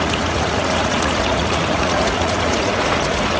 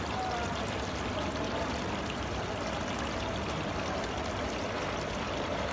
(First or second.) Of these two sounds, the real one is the second